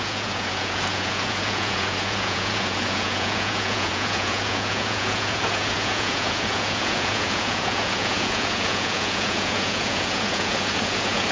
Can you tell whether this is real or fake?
fake